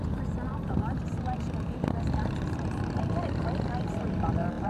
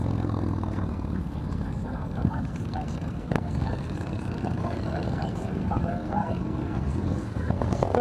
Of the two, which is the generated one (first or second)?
second